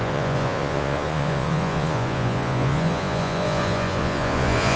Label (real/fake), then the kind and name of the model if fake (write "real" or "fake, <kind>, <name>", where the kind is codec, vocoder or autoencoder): fake, vocoder, Vocos